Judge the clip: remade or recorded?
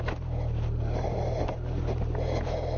recorded